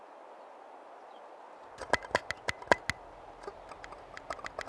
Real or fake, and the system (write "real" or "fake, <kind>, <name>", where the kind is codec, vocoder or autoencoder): real